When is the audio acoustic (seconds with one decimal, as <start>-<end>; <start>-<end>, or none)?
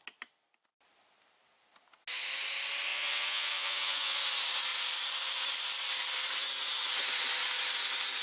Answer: 0.0-2.9; 4.2-8.2